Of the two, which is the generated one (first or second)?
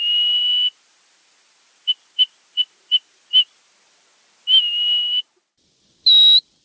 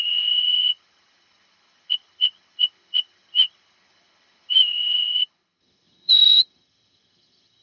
second